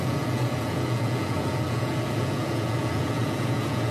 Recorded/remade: remade